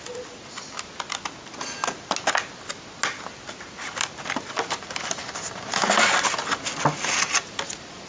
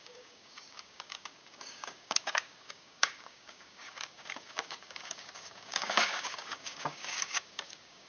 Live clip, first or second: first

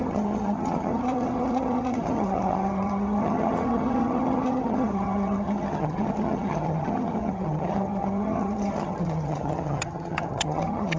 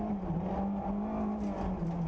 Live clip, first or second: second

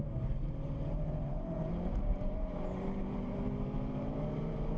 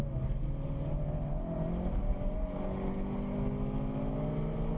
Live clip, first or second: second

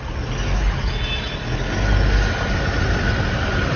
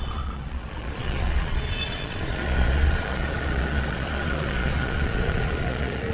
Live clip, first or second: first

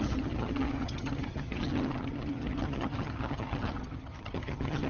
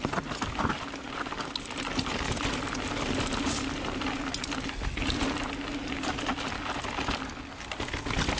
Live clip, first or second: second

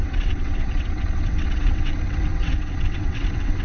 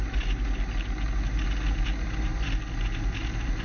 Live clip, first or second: second